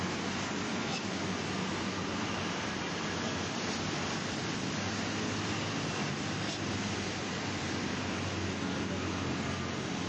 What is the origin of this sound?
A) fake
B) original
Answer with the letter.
B